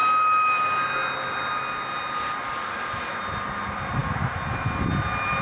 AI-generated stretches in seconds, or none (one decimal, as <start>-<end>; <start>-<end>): none